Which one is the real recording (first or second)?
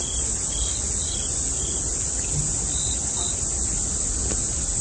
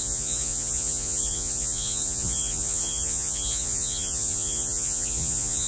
first